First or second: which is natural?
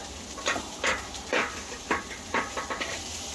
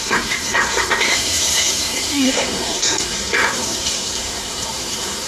first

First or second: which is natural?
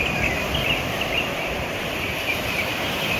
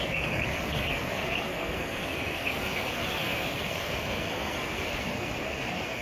first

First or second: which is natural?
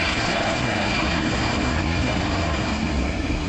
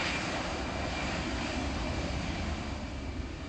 second